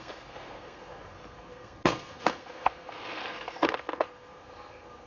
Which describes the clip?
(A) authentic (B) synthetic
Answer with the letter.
B